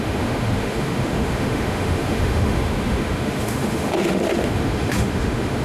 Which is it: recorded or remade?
remade